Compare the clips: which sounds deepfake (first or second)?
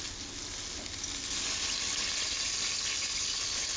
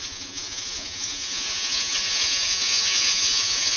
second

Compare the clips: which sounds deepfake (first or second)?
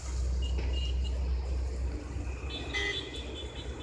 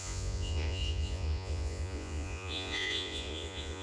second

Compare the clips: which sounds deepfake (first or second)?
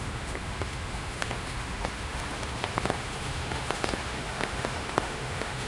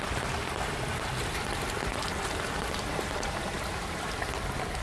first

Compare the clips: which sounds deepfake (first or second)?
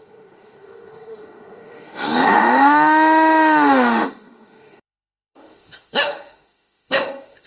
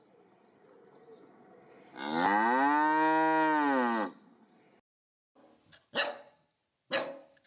first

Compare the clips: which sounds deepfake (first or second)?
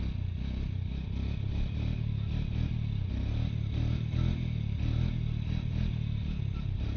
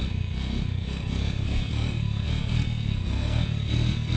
second